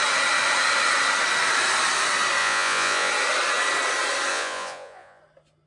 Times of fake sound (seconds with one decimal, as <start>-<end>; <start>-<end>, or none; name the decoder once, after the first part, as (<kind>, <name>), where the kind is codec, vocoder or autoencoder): 2.4-3.1 (vocoder, Vocos); 4.3-5.2